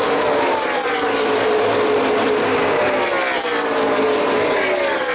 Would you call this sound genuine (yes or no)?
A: yes